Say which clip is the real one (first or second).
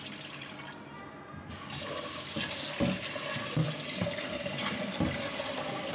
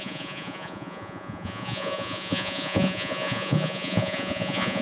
first